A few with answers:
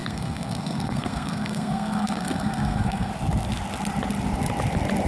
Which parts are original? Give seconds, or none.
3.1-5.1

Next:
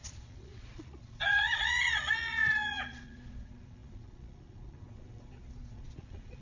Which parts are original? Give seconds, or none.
none

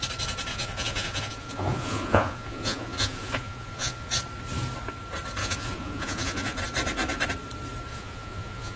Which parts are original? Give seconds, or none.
0.0-0.5; 4.1-5.4; 6.6-7.9

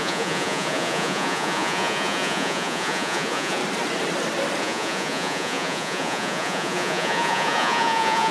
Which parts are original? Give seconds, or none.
3.6-4.6

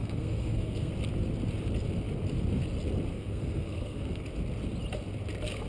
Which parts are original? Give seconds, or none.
0.9-3.1; 4.2-5.7

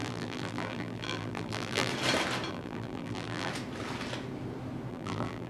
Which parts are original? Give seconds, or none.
1.9-2.5; 3.5-4.9

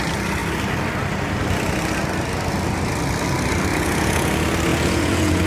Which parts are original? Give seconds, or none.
0.0-3.7; 4.3-4.7